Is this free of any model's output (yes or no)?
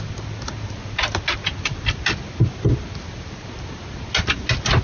yes